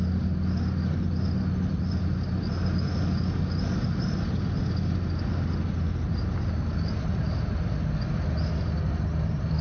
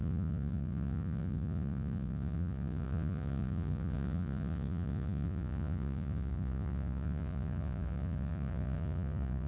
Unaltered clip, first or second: first